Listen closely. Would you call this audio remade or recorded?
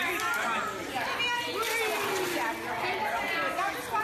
recorded